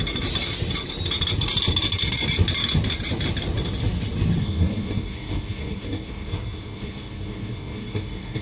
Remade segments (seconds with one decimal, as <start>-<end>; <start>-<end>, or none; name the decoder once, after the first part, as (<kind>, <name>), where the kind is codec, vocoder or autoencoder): 4.4-8.4 (codec, SNAC)